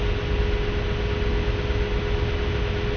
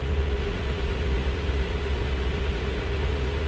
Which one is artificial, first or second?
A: second